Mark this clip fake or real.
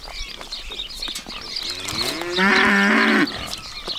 real